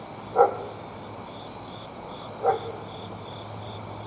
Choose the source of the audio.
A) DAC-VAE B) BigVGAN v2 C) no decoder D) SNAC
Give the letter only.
C